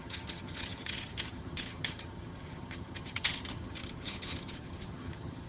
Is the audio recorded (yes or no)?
no